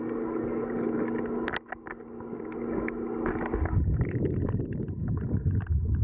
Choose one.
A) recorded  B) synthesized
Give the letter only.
A